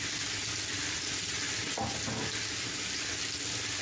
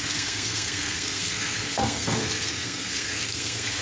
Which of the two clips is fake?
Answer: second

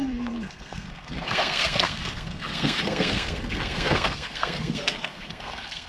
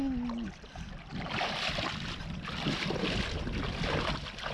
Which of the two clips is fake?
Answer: first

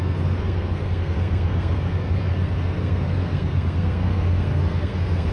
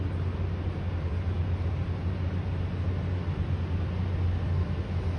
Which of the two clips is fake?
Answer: first